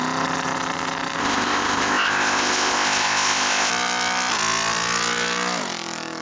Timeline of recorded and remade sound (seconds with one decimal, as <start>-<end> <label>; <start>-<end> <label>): 0.0-1.2 recorded; 1.2-3.7 remade; 3.7-6.2 recorded